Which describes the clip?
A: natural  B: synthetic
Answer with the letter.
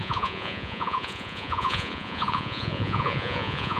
B